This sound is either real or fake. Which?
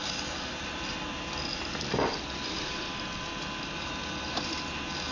real